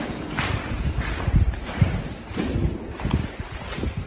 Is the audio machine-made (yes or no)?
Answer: yes